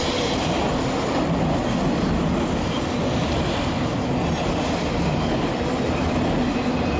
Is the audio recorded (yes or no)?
yes